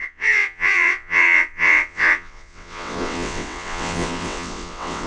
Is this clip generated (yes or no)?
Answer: yes